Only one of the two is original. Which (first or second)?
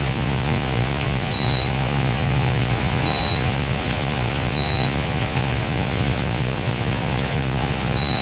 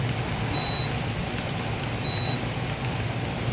second